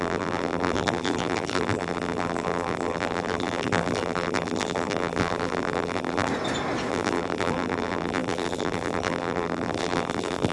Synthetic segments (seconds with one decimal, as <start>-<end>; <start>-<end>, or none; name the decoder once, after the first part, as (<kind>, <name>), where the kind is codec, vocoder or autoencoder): 0.0-6.3 (vocoder, BigVGAN v2); 6.9-10.5